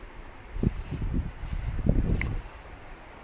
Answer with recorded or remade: recorded